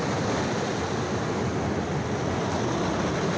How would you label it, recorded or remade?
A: recorded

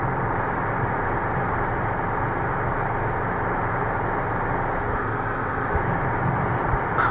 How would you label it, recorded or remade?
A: recorded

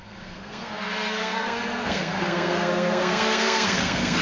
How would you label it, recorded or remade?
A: remade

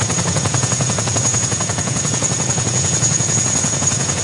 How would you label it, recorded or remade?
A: remade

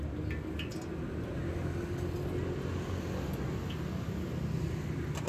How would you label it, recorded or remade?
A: recorded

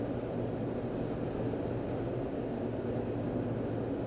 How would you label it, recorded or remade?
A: recorded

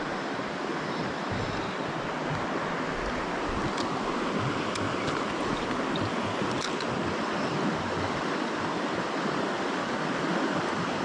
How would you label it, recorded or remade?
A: recorded